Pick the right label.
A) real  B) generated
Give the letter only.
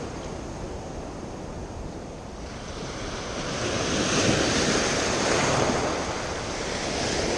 A